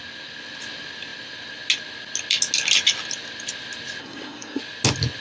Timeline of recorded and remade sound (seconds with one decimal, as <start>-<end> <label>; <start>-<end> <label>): 0.0-4.0 recorded; 4.0-4.6 remade; 4.6-5.2 recorded